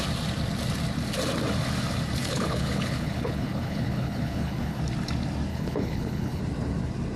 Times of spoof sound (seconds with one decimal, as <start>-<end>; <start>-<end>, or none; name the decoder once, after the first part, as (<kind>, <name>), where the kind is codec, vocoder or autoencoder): 2.2-4.8 (codec, HILCodec); 5.5-6.4